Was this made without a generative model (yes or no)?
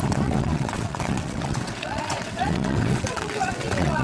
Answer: no